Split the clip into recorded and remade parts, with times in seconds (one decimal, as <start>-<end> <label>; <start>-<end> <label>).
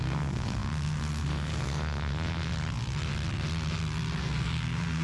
0.0-2.5 remade; 2.5-4.2 recorded; 4.2-5.0 remade